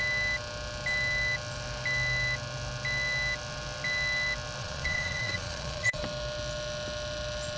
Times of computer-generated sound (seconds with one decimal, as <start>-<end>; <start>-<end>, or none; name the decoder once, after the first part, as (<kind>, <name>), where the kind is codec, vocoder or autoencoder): 4.6-6.0 (vocoder, Vocos)